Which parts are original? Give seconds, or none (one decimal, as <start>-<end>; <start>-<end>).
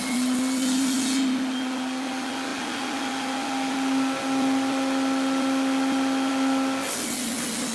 0.0-7.7